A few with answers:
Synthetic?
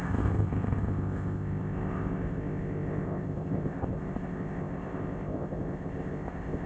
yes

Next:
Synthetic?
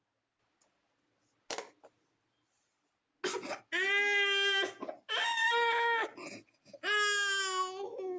no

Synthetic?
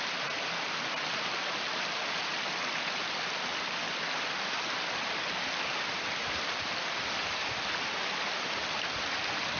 no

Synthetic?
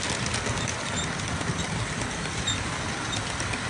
no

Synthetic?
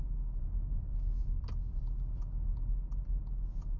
no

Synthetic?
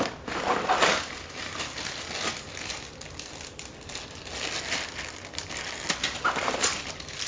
no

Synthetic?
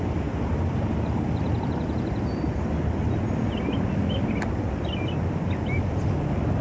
no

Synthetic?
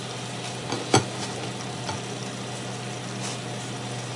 no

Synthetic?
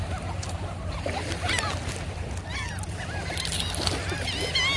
no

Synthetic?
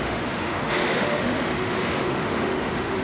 yes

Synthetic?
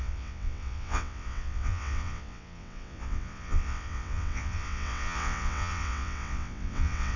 yes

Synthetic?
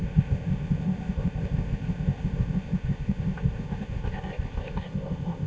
yes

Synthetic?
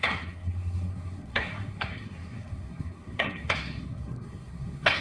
yes